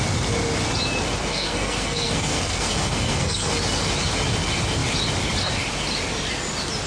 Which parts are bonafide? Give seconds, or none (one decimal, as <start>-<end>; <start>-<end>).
0.0-1.3; 3.5-6.9